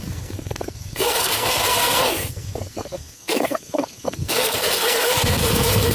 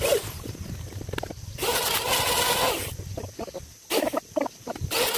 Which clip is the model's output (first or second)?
first